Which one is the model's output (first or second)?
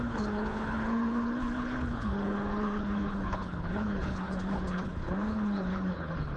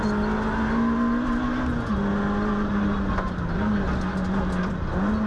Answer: first